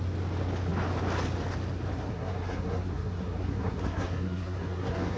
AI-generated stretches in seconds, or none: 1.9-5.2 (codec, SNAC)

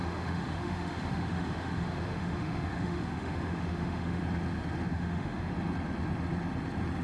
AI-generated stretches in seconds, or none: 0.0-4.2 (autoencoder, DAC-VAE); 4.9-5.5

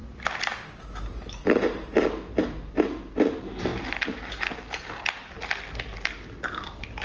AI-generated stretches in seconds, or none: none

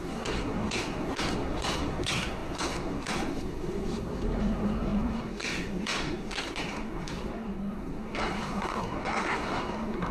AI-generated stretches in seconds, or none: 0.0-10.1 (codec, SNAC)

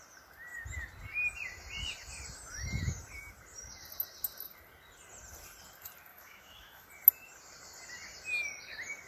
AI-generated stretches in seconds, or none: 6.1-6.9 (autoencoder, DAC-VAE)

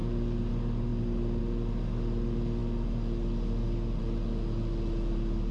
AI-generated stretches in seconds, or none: none